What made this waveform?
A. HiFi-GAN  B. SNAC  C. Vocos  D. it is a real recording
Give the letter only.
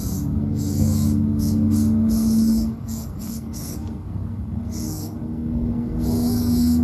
B